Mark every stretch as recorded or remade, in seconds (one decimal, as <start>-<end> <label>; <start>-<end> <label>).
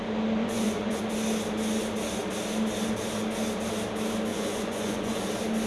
0.0-0.4 recorded; 0.4-1.0 remade; 1.0-4.3 recorded; 4.3-5.2 remade; 5.2-5.7 recorded